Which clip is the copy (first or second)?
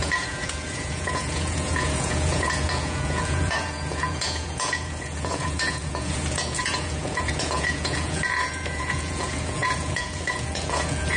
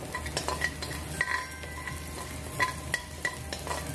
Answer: first